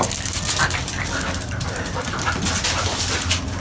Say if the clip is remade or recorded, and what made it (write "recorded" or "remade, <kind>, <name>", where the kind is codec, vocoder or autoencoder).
recorded